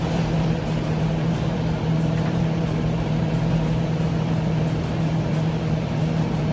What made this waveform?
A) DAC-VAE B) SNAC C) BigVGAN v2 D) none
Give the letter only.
C